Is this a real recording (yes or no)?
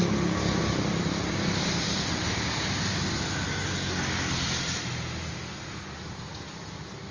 yes